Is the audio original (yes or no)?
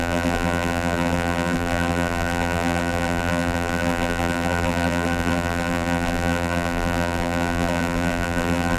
no